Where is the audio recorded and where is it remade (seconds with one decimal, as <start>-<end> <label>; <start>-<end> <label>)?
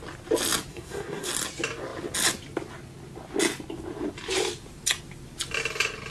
0.0-0.7 recorded; 0.7-1.3 remade; 1.3-6.1 recorded